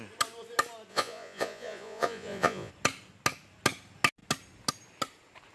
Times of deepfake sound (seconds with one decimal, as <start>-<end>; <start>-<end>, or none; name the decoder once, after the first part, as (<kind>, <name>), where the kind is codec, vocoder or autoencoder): 0.9-2.7 (vocoder, Vocos)